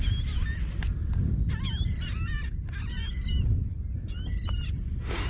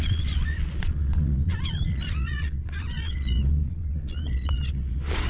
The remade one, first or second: second